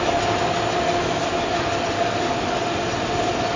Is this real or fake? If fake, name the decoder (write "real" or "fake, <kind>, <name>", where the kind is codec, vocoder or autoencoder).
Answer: real